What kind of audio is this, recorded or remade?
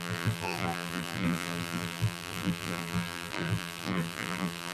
remade